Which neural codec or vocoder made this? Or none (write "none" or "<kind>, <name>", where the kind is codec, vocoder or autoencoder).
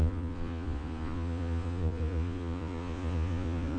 vocoder, Vocos